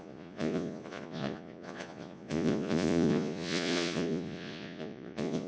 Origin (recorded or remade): remade